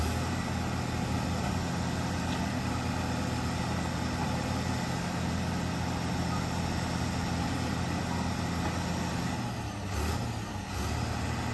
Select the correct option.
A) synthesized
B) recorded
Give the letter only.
B